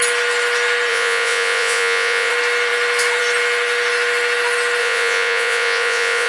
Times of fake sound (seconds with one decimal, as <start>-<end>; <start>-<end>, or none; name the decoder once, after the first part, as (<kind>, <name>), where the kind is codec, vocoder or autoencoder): 0.9-2.3 (vocoder, Vocos); 4.8-6.3